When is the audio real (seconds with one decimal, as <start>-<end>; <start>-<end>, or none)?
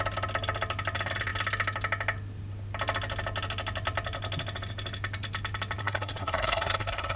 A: 0.0-5.8